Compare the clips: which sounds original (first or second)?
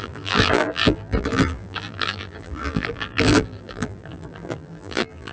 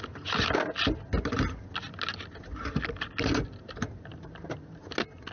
second